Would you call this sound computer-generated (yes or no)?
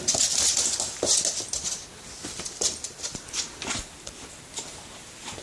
no